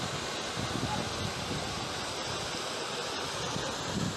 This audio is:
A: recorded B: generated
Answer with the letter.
A